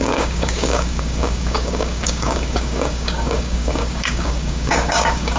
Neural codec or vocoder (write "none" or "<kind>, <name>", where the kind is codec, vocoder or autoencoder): codec, DAC